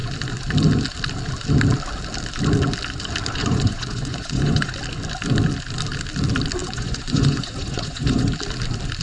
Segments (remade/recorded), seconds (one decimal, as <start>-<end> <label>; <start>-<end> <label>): 0.0-3.4 recorded; 3.4-4.7 remade; 4.7-6.6 recorded; 6.6-8.3 remade; 8.3-9.0 recorded